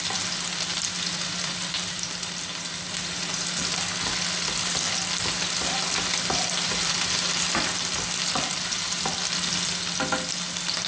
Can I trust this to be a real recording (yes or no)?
yes